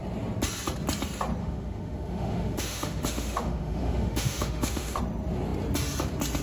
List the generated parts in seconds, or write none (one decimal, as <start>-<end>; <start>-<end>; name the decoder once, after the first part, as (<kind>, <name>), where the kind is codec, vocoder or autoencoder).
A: 1.4-5.0 (autoencoder, DAC-VAE)